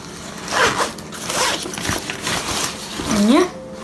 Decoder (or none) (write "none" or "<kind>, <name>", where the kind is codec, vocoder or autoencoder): none